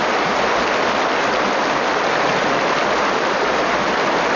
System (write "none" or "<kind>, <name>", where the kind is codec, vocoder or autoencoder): none